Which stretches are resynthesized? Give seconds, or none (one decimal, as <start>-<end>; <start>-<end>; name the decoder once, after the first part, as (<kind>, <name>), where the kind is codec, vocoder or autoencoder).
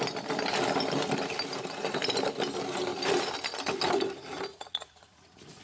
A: 4.5-5.6 (vocoder, Vocos)